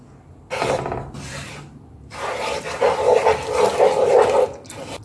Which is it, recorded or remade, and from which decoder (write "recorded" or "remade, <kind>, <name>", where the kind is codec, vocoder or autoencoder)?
recorded